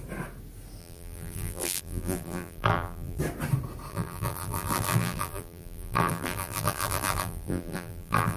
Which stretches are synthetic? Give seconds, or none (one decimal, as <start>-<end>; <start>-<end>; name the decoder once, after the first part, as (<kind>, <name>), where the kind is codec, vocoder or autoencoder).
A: 0.8-3.2 (vocoder, BigVGAN v2); 3.9-8.4